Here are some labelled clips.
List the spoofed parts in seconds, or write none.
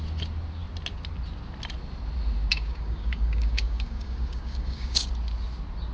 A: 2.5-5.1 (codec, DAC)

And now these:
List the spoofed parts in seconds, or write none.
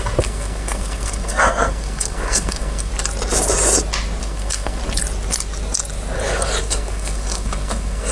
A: 0.0-2.9 (codec, SNAC); 4.2-4.8; 6.6-8.1